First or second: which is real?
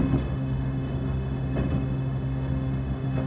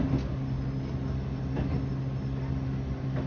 second